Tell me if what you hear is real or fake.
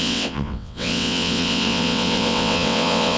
fake